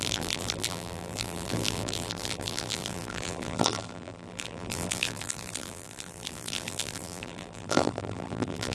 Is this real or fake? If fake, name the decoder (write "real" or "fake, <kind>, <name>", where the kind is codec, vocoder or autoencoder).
fake, vocoder, BigVGAN v2